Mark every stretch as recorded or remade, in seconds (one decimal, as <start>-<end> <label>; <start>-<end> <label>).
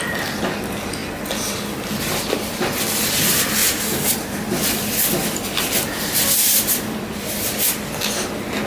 0.0-8.7 recorded